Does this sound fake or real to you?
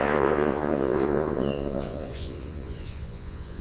fake